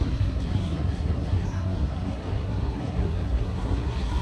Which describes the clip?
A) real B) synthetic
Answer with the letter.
B